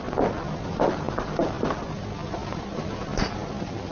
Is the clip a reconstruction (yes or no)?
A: no